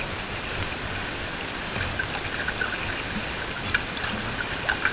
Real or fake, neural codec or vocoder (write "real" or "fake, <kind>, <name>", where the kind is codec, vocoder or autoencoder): real